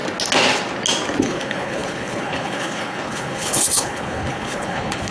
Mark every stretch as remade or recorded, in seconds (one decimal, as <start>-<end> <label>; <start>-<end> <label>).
0.0-1.2 recorded; 1.2-5.1 remade